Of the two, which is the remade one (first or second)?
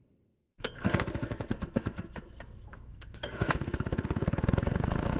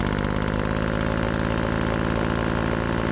first